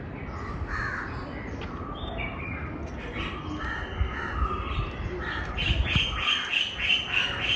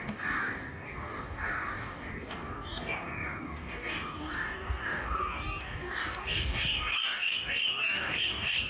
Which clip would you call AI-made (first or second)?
second